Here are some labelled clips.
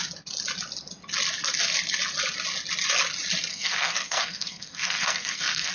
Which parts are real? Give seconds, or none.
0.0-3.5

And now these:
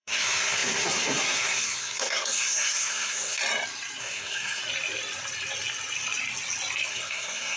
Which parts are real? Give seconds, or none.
3.4-4.0; 4.6-6.9

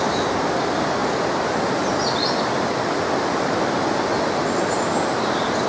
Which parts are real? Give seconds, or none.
0.0-5.7